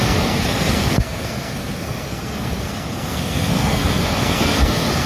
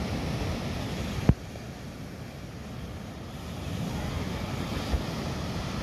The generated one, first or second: first